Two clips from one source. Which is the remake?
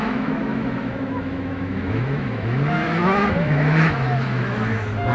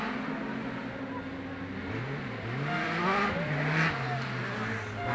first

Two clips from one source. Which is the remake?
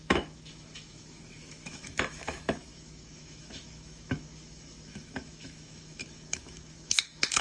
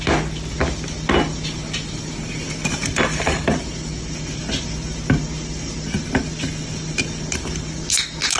first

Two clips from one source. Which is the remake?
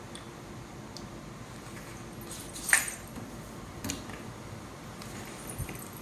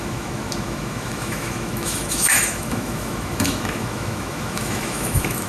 second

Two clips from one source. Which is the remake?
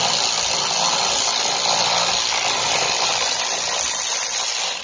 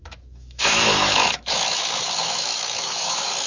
second